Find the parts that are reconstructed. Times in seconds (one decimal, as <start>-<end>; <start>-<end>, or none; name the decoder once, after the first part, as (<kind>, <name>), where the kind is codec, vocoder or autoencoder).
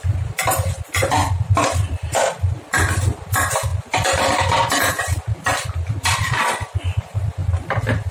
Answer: 0.0-7.4 (vocoder, BigVGAN v2)